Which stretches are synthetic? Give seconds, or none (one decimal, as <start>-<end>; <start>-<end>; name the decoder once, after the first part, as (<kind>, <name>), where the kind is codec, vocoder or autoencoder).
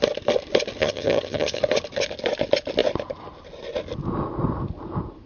0.8-1.6 (vocoder, HiFi-GAN)